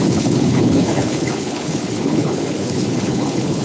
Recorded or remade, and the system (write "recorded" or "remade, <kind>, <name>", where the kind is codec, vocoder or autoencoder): remade, codec, HILCodec